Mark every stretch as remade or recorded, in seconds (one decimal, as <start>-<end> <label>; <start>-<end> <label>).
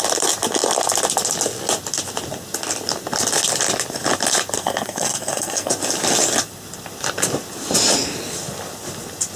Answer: 0.0-4.6 recorded; 4.6-5.7 remade; 5.7-9.4 recorded